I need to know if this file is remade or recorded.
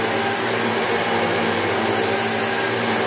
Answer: recorded